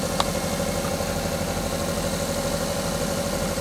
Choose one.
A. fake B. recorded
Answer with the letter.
B